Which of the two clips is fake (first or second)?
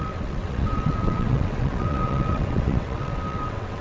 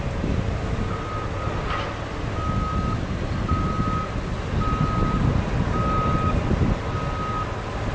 first